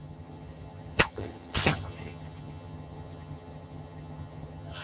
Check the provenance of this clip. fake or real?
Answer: fake